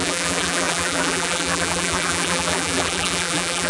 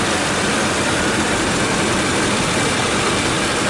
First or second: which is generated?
first